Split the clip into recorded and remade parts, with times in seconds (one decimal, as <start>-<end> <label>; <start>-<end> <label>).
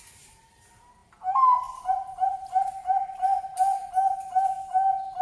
0.0-5.2 recorded